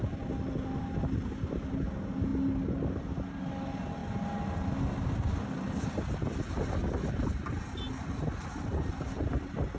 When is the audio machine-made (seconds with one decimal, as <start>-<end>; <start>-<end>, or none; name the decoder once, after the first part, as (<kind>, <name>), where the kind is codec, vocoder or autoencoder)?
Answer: none